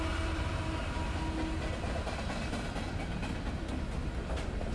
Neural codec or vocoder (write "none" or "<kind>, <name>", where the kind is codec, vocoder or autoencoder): none